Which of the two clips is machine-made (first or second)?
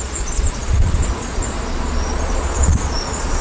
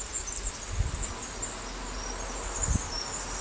first